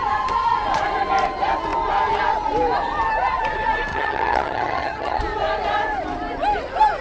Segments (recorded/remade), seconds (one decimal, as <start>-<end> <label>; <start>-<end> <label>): 0.0-3.9 recorded; 3.9-5.2 remade; 5.2-7.0 recorded